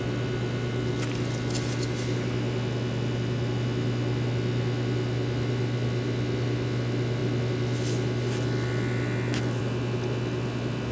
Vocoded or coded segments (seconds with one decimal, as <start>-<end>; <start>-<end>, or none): none